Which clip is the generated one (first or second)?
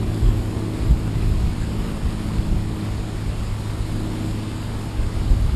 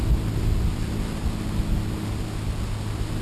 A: first